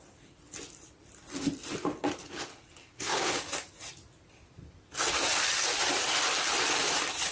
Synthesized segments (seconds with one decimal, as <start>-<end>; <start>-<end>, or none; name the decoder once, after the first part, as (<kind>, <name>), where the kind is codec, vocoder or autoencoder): 2.8-3.3 (codec, SNAC)